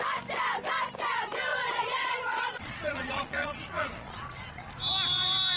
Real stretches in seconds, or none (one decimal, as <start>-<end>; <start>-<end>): 0.0-1.5; 4.7-5.6